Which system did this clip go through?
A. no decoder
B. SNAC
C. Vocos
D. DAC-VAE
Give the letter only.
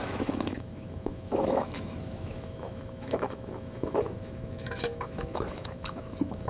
D